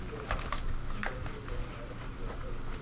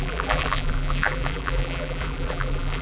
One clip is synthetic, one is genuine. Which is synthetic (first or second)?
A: second